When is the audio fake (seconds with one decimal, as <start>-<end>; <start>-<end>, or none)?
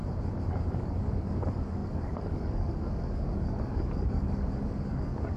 0.7-5.4